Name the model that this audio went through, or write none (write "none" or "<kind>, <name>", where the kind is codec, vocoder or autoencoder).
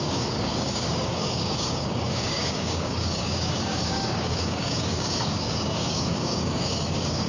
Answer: codec, DAC